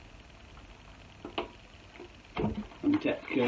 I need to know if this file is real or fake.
real